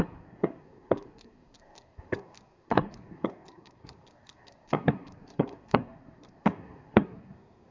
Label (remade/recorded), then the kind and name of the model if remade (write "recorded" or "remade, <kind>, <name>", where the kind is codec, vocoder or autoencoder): remade, codec, SNAC